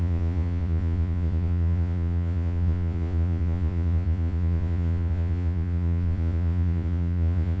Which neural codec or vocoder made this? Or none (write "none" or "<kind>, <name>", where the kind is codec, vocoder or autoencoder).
vocoder, Vocos